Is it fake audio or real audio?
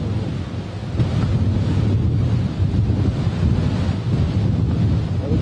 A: real